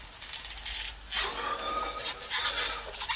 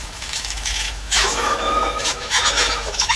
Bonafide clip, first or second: first